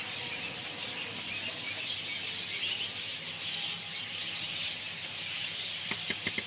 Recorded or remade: recorded